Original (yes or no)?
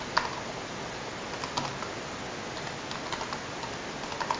yes